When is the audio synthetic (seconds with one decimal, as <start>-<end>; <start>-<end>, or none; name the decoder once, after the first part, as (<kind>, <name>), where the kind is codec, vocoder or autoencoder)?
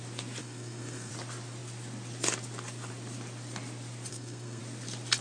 0.4-1.1 (codec, SNAC); 4.1-4.6